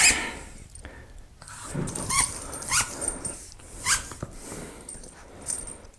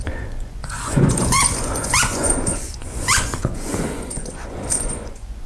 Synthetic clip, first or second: second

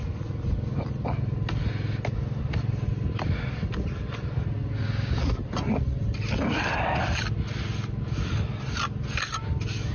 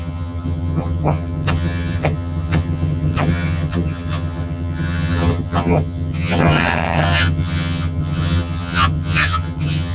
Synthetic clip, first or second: second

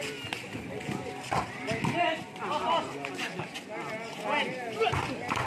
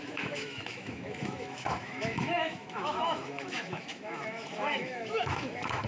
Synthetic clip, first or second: second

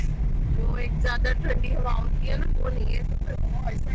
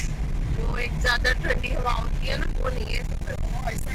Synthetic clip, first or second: second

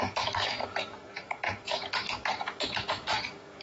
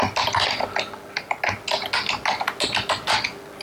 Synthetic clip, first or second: first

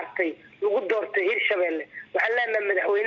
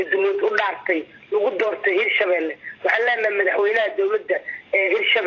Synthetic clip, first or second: second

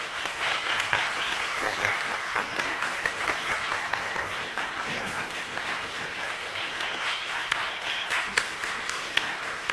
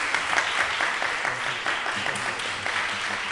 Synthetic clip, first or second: first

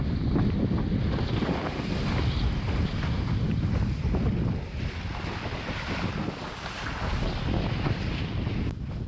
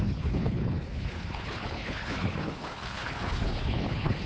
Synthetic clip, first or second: second